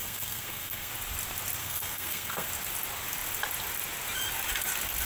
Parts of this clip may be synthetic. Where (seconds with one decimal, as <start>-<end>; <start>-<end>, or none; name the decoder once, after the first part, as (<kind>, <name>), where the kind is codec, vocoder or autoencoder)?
0.0-0.9 (codec, SNAC); 1.6-2.5